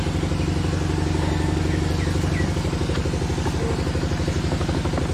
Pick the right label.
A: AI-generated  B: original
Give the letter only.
B